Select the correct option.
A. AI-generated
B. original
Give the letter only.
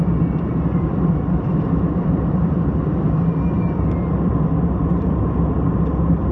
A